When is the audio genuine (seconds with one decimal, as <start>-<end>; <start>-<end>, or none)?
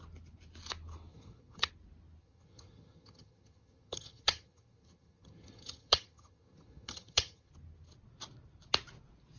0.0-1.1; 1.7-2.2; 7.5-9.4